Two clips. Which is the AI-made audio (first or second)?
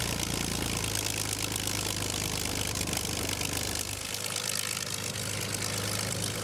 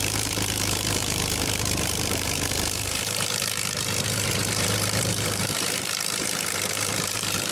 second